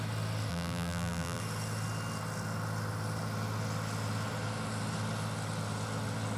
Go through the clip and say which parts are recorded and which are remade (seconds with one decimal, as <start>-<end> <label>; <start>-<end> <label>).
0.0-0.5 recorded; 0.5-1.4 remade; 1.4-6.4 recorded